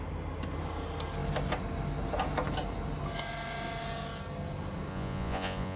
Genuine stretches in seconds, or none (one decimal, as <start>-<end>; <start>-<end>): 0.0-4.9